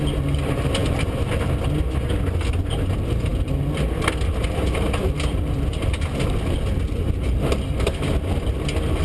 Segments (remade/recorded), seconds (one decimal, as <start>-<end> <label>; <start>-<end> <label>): 0.0-9.0 recorded